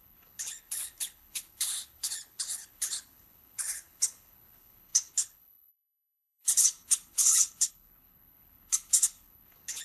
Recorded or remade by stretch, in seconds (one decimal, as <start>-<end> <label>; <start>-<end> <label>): 0.0-9.8 remade